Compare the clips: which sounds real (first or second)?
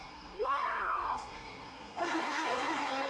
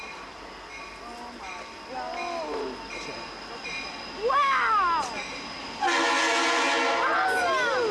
second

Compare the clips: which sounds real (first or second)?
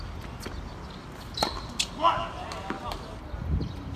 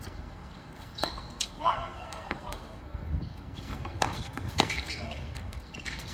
first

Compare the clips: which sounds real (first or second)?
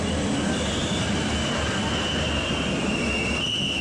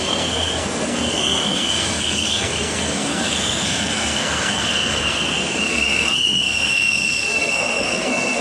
first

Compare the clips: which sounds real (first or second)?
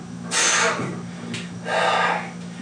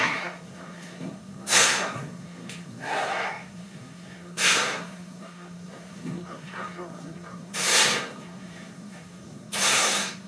first